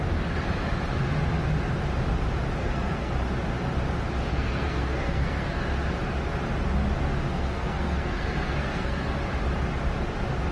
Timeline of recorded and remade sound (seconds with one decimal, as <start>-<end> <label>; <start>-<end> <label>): 0.0-2.6 recorded; 2.6-3.1 remade; 3.1-4.3 recorded; 4.3-5.6 remade; 5.6-7.3 recorded; 7.3-9.2 remade; 9.2-10.5 recorded